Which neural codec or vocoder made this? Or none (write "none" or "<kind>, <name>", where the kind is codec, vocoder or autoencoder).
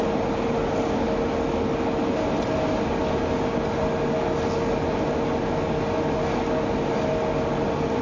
none